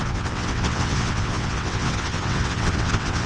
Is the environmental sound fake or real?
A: fake